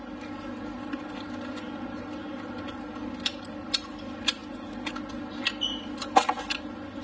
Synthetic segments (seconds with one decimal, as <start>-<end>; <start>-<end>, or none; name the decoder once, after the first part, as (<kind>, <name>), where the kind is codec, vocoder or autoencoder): none